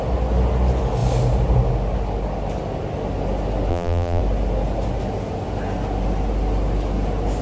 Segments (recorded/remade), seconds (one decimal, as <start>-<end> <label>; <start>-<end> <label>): 0.0-3.7 recorded; 3.7-4.2 remade; 4.2-7.4 recorded